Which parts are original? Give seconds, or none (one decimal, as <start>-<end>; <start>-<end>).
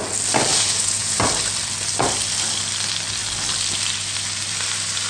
0.0-0.5; 1.2-5.1